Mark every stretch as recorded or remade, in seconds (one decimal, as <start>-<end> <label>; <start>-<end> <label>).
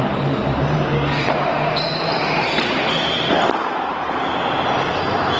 0.0-0.4 recorded; 0.4-2.7 remade; 2.7-3.9 recorded; 3.9-4.5 remade; 4.5-5.4 recorded